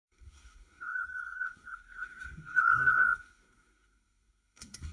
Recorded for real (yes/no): no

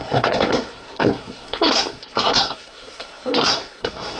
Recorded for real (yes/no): no